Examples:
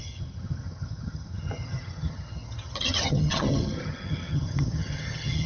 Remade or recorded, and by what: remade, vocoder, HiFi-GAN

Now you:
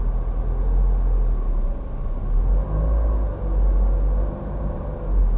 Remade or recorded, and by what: recorded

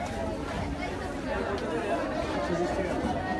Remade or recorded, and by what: recorded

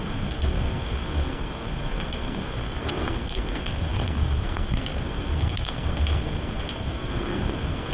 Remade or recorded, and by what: remade, codec, SNAC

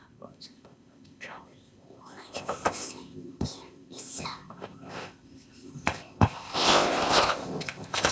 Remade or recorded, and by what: remade, codec, ZipCodec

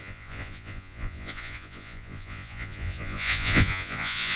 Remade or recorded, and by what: remade, vocoder, Vocos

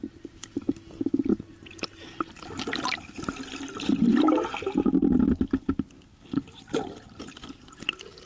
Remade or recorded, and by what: recorded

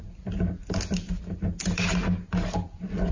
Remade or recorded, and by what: recorded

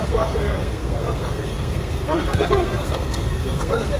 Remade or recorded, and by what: remade, codec, SNAC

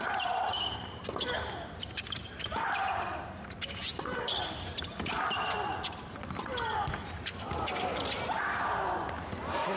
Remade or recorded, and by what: recorded